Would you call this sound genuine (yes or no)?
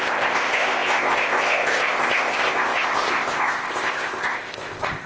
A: no